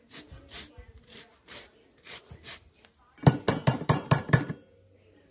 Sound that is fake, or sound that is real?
real